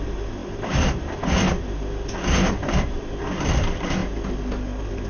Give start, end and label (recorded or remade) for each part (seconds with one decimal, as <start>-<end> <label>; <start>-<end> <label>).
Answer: 0.0-5.1 recorded